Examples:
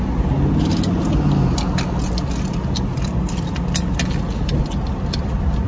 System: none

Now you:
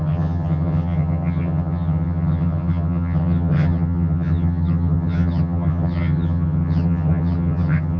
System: vocoder, HiFi-GAN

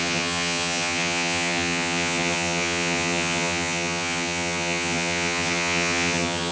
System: vocoder, HiFi-GAN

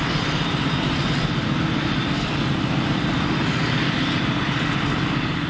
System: none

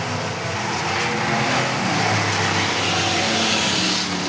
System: none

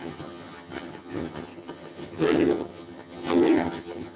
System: vocoder, HiFi-GAN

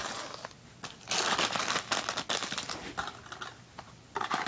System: none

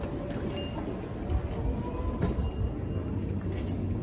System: none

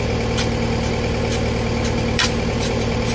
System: none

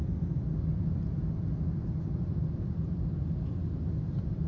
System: none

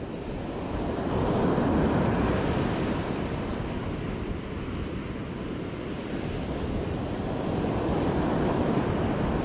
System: none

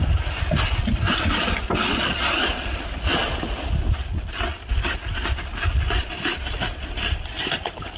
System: none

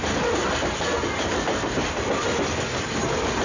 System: none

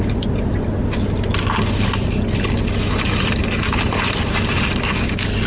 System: none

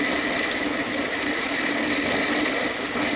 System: none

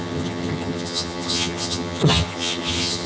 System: vocoder, HiFi-GAN